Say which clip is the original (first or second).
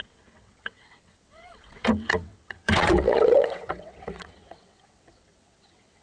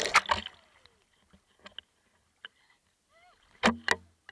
second